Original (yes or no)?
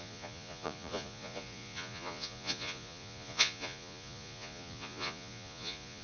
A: no